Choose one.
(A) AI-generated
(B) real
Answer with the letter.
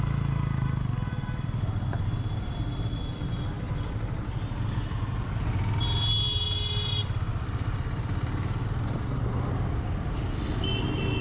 B